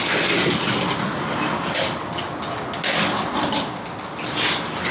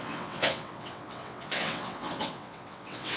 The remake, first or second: second